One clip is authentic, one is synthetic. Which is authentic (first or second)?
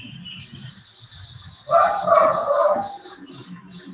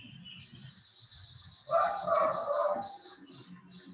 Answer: second